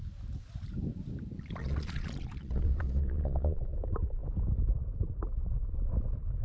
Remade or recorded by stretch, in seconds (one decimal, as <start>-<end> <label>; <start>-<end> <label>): 0.0-1.6 recorded; 1.6-3.6 remade; 3.6-6.4 recorded